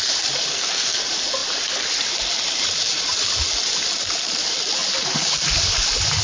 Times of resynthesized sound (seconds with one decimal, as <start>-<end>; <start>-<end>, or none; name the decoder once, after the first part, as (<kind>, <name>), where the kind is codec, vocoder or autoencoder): 0.5-1.0 (codec, SNAC)

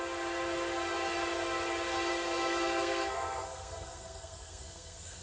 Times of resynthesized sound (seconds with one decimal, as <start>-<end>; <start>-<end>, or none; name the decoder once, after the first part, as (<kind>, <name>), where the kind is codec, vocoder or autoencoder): 2.1-5.2 (codec, SNAC)

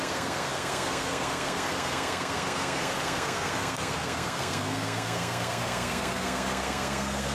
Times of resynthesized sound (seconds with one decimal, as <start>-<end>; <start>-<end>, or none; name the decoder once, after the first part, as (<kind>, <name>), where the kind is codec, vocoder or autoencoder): 0.0-7.3 (codec, SNAC)